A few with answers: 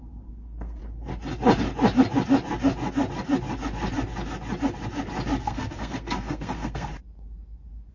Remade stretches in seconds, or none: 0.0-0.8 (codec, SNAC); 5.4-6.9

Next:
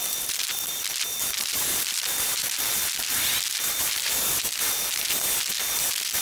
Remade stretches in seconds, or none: 0.0-2.4 (vocoder, BigVGAN v2); 3.5-6.2

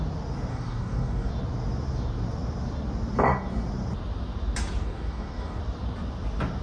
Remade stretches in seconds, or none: 0.5-1.3 (codec, DAC); 4.8-5.6

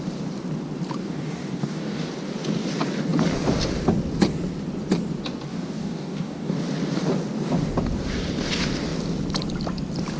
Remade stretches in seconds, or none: 1.0-2.1 (codec, DAC); 5.5-6.6

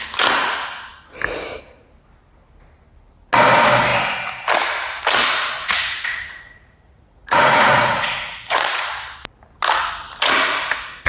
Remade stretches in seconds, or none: 5.6-8.9 (vocoder, Vocos)

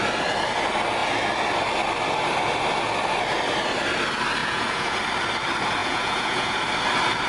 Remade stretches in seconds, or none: 4.4-5.0 (vocoder, Vocos); 5.8-6.6